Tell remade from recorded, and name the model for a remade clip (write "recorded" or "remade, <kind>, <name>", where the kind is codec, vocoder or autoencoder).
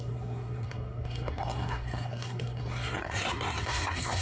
remade, codec, SNAC